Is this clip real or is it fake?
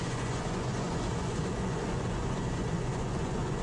fake